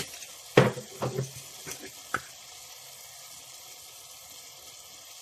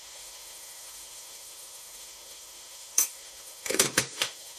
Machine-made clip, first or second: second